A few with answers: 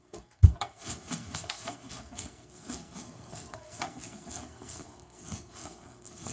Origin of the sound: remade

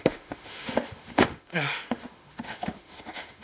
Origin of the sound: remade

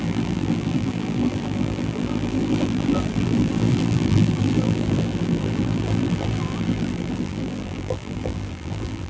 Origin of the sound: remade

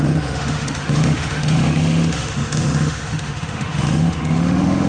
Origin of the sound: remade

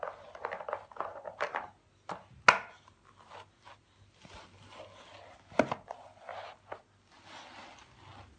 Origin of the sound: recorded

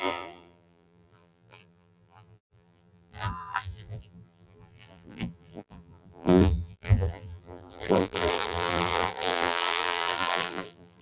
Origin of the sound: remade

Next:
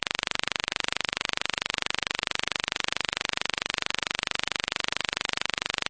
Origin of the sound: recorded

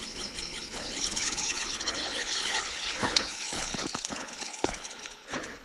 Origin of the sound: remade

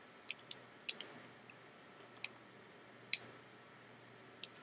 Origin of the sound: recorded